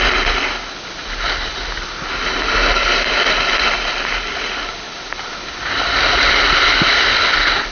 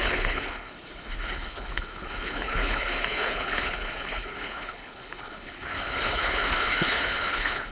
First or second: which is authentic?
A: first